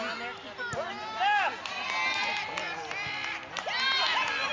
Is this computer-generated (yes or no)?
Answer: no